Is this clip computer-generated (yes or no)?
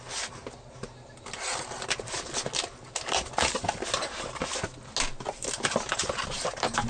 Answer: no